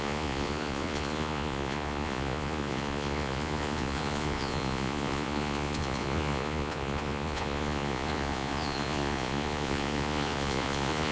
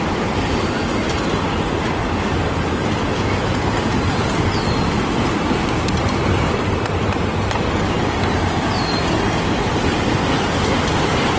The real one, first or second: second